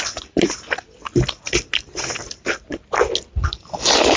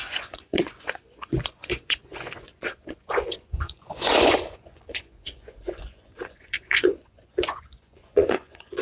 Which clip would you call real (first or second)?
first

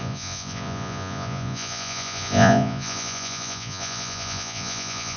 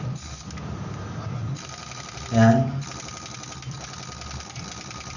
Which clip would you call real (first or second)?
second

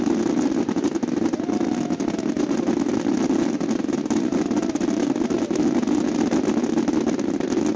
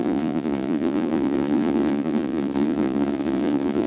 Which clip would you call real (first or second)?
first